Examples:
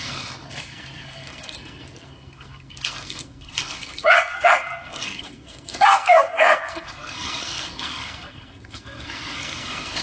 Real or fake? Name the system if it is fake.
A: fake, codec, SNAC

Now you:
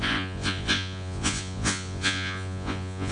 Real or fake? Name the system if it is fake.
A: fake, vocoder, Vocos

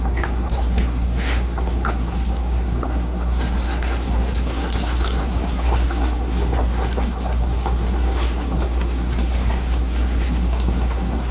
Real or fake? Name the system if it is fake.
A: fake, codec, SNAC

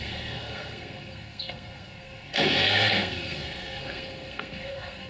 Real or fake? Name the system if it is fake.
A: fake, codec, SNAC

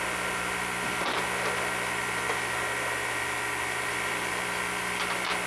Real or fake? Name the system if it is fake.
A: real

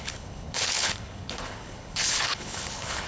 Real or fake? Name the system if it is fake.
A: fake, codec, HILCodec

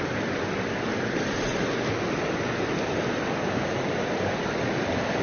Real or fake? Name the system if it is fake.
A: real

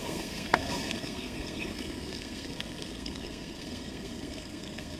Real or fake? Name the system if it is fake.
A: fake, codec, SNAC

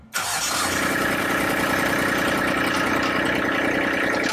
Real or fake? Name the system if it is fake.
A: real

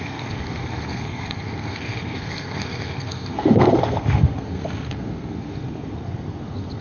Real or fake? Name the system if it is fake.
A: fake, codec, SNAC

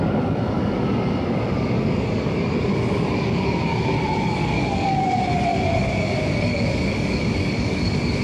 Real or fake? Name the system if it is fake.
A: fake, codec, DAC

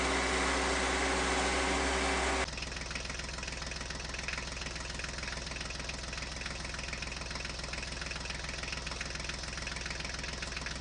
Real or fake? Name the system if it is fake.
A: real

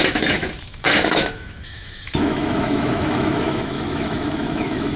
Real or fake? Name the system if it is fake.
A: fake, autoencoder, DAC-VAE